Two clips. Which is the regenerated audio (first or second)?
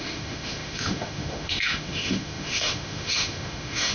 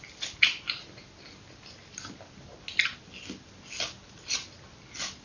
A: first